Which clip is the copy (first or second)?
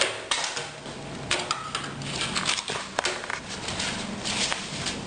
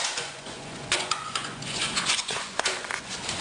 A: second